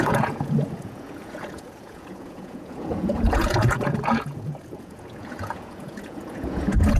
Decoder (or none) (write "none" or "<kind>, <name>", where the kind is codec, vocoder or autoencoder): vocoder, Vocos